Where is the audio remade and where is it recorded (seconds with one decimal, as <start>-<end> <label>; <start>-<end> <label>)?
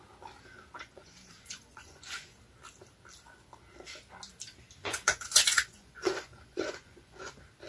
0.0-0.8 recorded; 0.8-2.4 remade; 2.4-4.8 recorded; 4.8-7.3 remade; 7.3-7.7 recorded